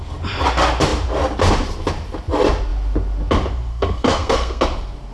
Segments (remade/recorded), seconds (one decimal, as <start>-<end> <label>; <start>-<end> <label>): 0.0-3.7 recorded; 3.7-4.6 remade; 4.6-5.1 recorded